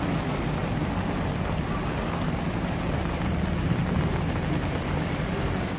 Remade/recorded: recorded